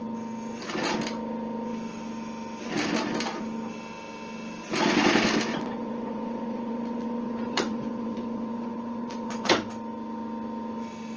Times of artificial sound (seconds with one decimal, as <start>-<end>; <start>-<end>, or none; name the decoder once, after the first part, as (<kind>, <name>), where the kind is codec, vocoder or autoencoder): 5.5-9.7 (vocoder, WaveNeXt)